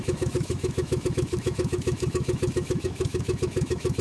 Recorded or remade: remade